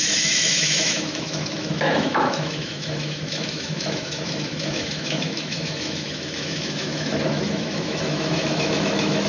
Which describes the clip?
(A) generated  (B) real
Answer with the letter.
A